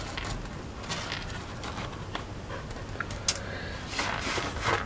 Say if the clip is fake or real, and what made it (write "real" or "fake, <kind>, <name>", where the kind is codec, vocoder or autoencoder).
real